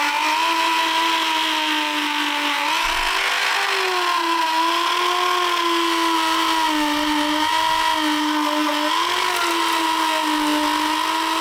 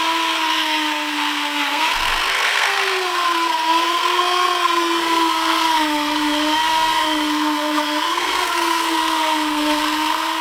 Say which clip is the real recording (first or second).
first